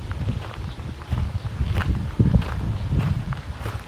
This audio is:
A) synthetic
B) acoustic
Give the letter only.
A